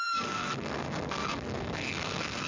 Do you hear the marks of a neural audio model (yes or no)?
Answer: yes